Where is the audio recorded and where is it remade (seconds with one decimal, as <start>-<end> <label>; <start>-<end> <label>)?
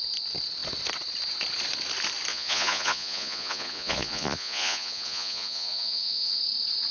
0.0-2.3 recorded; 2.3-6.4 remade; 6.4-6.9 recorded